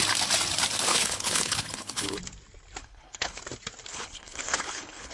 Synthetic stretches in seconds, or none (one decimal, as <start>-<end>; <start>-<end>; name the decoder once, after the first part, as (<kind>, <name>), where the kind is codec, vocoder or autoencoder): 0.9-2.2 (codec, HILCodec); 2.8-3.4; 3.9-5.1